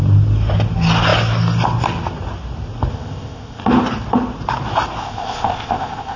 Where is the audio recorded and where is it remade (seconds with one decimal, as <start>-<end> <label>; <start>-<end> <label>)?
0.0-2.9 recorded; 2.9-3.6 remade; 3.6-5.0 recorded; 5.0-6.2 remade